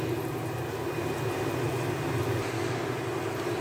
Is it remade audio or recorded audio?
recorded